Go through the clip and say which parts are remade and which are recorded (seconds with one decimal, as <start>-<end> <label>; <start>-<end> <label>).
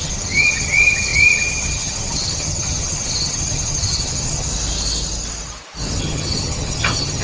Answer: 0.0-4.5 remade; 4.5-6.0 recorded; 6.0-7.2 remade